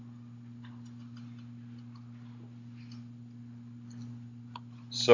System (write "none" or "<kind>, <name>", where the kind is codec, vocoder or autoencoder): none